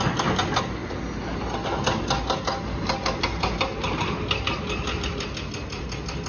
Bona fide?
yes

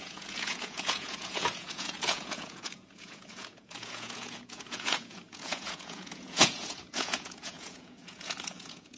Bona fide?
no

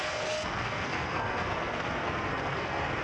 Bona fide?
no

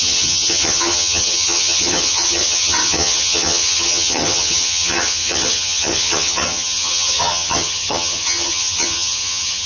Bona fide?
no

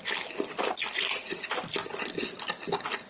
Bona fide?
yes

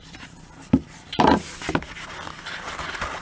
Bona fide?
yes